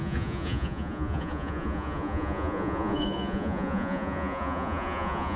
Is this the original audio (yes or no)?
no